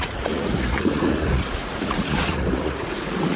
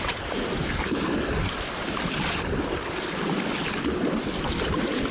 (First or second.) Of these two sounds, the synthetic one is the first